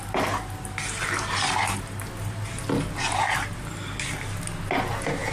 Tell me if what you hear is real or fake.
real